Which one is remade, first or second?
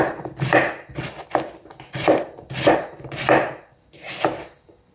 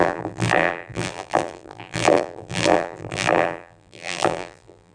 second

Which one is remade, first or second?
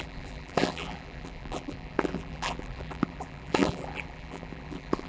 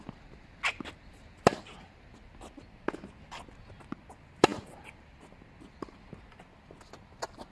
first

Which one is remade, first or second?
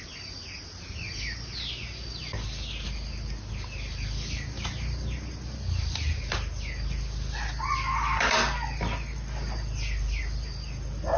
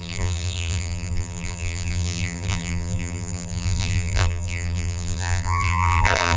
second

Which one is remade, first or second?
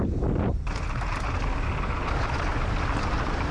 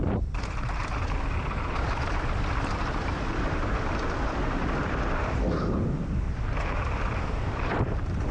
second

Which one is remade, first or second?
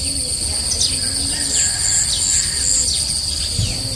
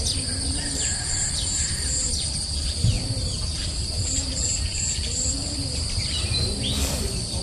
second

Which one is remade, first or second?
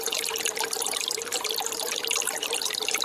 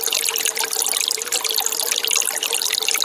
first